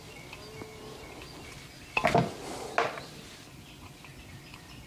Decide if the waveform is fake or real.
real